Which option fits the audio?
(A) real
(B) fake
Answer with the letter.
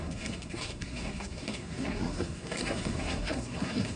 B